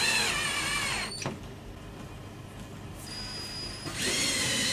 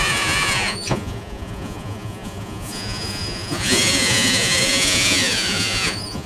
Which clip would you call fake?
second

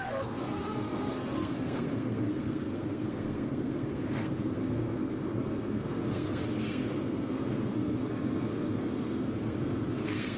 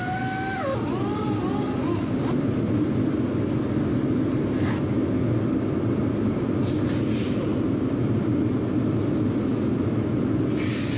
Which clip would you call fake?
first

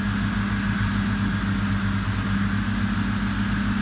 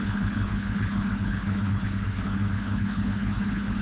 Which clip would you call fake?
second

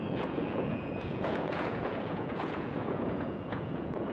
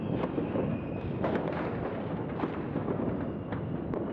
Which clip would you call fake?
first